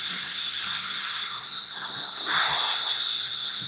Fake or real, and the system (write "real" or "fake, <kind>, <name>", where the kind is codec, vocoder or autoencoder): fake, codec, SNAC